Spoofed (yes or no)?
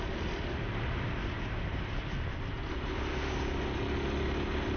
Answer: no